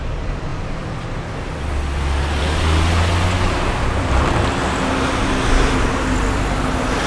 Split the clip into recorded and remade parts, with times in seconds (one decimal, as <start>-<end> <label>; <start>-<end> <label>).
0.0-7.1 recorded